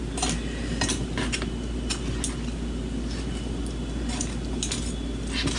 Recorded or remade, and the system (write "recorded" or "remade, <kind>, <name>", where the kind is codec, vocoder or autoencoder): recorded